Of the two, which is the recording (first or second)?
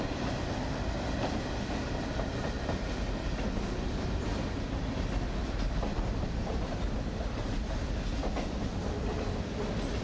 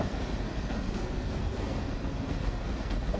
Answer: first